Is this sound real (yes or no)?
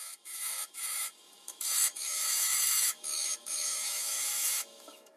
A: no